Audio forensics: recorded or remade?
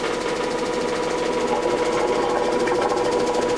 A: recorded